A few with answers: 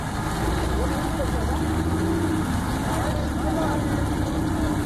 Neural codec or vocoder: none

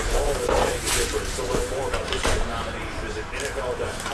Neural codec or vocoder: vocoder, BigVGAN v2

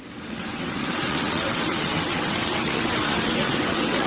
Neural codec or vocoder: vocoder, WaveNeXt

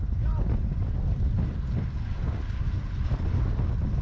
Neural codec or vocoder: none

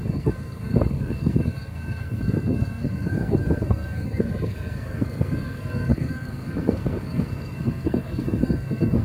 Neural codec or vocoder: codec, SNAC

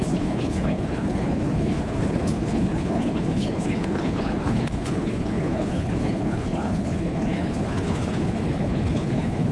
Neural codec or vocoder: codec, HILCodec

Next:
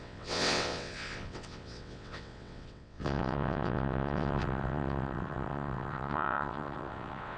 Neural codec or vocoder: vocoder, WaveNeXt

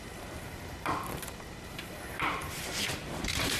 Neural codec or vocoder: vocoder, BigVGAN v2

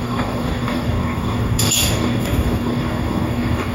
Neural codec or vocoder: codec, DAC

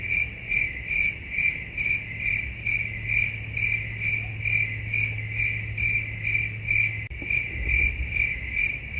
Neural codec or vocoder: none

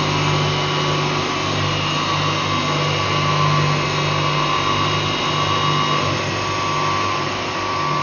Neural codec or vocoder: none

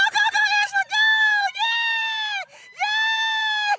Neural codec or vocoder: vocoder, BigVGAN v2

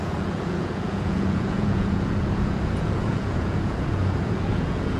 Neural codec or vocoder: vocoder, Vocos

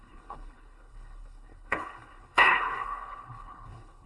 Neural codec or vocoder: codec, HILCodec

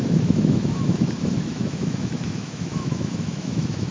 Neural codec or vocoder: autoencoder, DAC-VAE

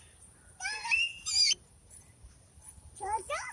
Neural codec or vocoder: vocoder, BigVGAN v2